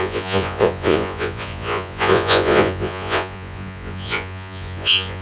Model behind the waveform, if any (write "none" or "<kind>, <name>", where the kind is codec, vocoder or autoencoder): vocoder, Vocos